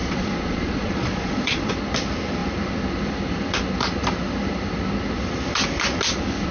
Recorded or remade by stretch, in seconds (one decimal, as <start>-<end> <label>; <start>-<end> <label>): 0.0-1.7 remade; 1.7-6.5 recorded